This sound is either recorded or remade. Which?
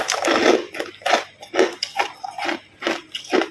recorded